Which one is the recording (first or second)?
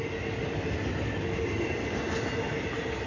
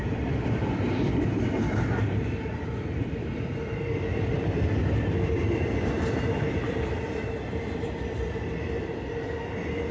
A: first